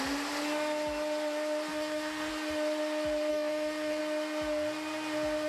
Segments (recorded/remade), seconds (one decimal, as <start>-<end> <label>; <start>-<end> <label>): 0.0-1.7 recorded; 1.7-2.3 remade; 2.3-3.3 recorded; 3.3-4.0 remade; 4.0-5.5 recorded